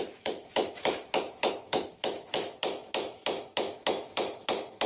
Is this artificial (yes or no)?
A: yes